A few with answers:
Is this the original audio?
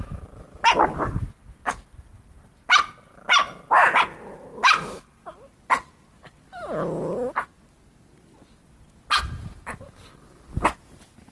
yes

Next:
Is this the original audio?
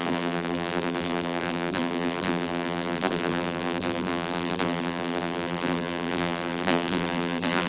no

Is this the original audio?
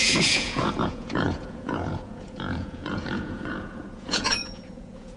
no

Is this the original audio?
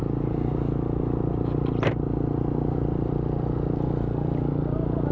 yes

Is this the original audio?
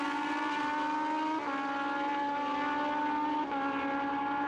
yes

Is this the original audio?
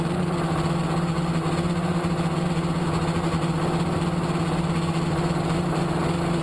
yes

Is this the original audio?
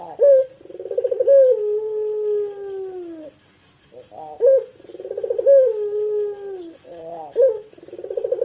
yes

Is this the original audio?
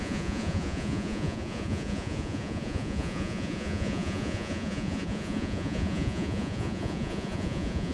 no